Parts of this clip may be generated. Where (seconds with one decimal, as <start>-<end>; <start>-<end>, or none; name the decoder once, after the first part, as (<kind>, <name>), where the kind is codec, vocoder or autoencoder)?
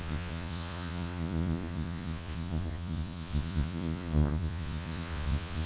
0.0-5.7 (vocoder, Vocos)